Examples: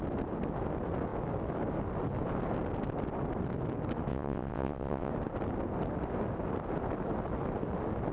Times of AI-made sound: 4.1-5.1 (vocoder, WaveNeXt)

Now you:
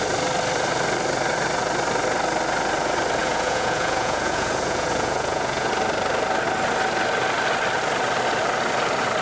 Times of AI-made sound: 3.2-5.7 (vocoder, Vocos)

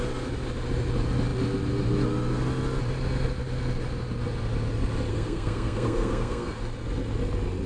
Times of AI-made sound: 5.1-6.6 (codec, SNAC)

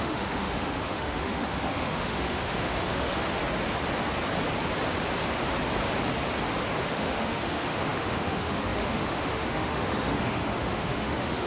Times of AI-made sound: 0.0-3.4 (autoencoder, DAC-VAE); 6.9-11.5

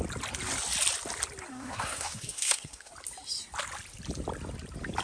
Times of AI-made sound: 1.5-2.9 (codec, SNAC)